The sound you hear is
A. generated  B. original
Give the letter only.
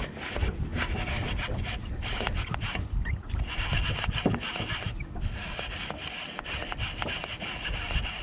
B